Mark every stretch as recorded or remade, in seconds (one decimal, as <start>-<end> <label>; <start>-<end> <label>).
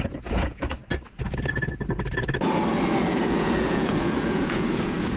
0.0-0.8 remade; 0.8-3.0 recorded; 3.0-5.2 remade